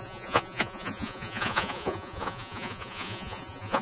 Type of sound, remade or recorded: remade